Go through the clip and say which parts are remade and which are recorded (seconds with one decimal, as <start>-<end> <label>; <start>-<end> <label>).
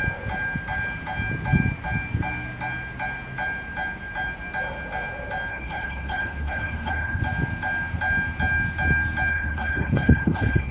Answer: 0.0-5.5 recorded; 5.5-7.2 remade; 7.2-9.3 recorded; 9.3-10.7 remade